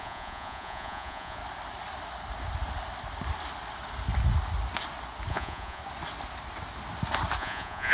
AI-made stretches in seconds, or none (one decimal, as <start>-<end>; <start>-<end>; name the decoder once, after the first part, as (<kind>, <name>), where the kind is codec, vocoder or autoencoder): 0.0-1.4 (vocoder, Vocos); 5.3-5.8; 7.4-7.9